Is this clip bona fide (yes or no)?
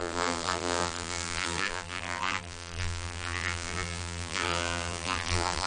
no